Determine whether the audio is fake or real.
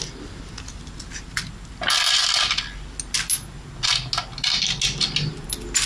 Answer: real